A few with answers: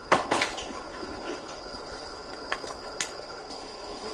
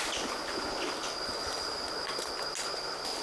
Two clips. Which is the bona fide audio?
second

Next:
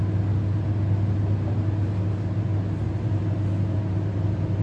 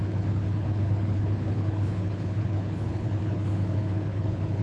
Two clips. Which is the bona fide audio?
first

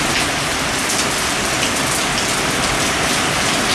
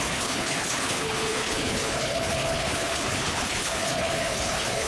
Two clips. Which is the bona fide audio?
first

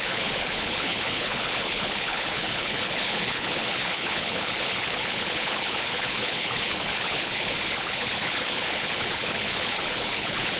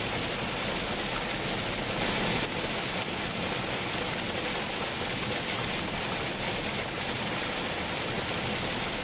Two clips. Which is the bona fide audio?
second